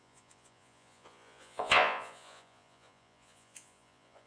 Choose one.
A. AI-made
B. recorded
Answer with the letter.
A